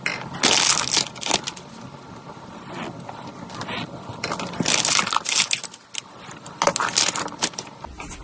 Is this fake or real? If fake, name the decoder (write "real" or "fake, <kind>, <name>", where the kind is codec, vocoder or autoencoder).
real